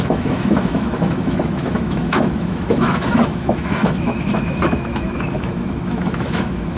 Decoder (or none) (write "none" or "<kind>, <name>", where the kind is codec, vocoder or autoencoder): autoencoder, DAC-VAE